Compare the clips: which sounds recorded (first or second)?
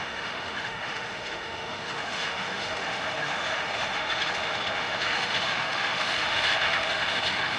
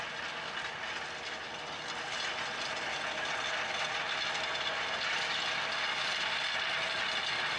second